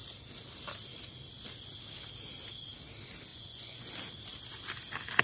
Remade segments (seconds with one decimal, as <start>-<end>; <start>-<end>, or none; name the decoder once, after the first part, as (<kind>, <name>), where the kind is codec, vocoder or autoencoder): 3.3-3.9 (vocoder, Vocos)